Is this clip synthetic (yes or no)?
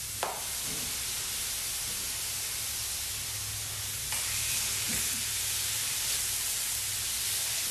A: no